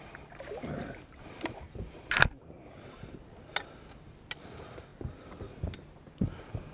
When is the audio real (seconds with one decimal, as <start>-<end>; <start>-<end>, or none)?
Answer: 0.0-6.7